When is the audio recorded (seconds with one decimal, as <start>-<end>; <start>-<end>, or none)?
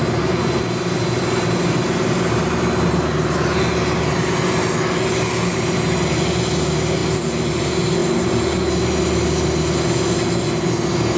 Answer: 0.0-11.2